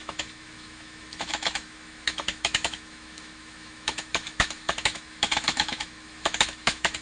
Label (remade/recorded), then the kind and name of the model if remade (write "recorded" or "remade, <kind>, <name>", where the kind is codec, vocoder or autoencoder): remade, autoencoder, DAC-VAE